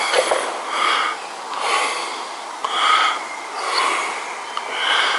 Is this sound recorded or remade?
recorded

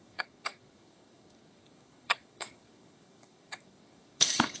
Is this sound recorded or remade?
remade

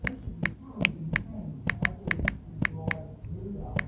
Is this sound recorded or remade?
recorded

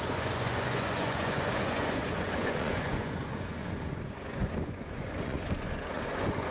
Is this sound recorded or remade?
remade